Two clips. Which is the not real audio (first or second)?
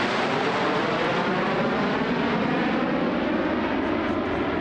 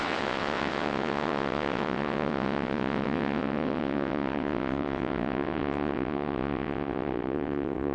second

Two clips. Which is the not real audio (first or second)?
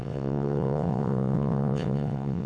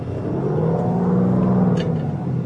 first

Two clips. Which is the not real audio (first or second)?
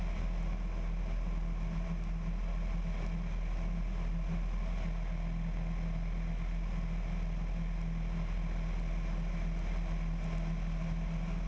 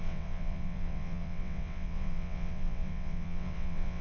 second